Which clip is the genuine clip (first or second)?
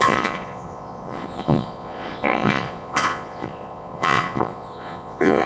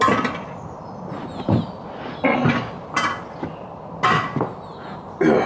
second